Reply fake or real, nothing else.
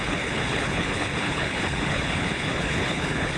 fake